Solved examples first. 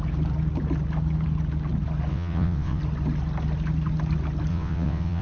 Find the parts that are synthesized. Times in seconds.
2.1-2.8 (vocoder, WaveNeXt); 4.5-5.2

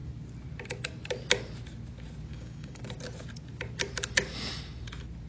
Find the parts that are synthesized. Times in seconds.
2.3-2.8 (codec, DAC)

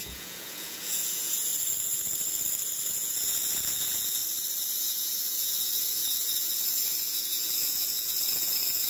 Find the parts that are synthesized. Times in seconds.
0.0-1.5 (vocoder, Vocos); 2.9-4.2; 4.8-8.9